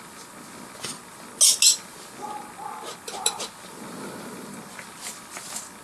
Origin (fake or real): real